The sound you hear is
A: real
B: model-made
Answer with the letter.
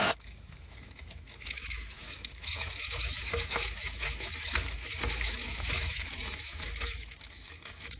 B